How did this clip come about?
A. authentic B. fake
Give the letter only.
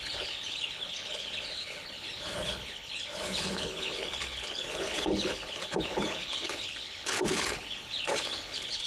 B